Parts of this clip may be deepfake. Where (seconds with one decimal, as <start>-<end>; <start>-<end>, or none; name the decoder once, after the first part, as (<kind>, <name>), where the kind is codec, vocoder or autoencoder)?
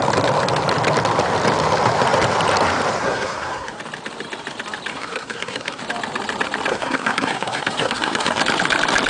3.0-3.8 (codec, SNAC); 4.9-5.8; 6.7-8.4